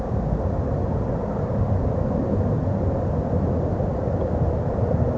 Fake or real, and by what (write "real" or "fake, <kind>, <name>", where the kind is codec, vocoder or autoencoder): real